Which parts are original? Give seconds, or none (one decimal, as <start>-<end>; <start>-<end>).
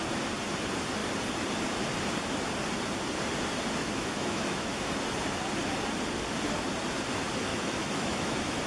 0.0-3.8; 5.0-7.5